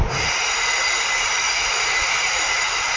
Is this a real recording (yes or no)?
yes